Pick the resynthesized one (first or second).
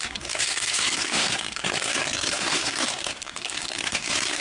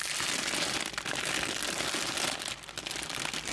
first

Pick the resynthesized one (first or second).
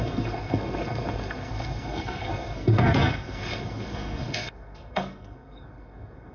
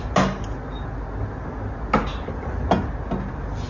first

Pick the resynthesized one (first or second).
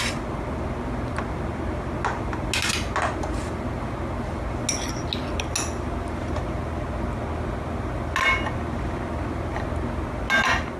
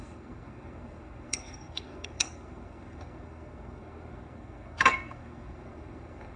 second